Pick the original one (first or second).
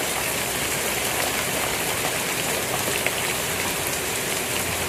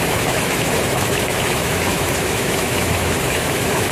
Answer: first